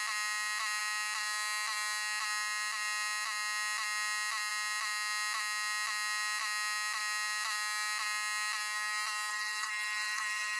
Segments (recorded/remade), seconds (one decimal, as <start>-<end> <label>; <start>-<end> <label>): 0.0-9.3 recorded; 9.3-10.6 remade